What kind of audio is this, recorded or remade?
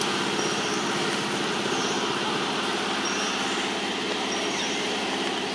recorded